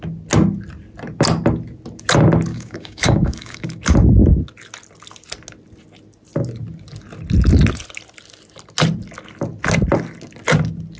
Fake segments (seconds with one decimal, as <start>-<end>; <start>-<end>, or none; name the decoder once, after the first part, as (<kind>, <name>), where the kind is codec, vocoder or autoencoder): 2.5-3.8 (codec, DAC)